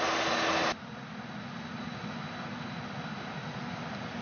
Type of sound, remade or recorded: recorded